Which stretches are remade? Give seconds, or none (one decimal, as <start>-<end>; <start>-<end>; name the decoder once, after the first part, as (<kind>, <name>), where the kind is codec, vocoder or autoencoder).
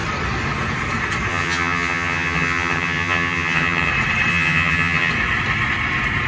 1.3-3.9 (vocoder, HiFi-GAN); 4.3-5.1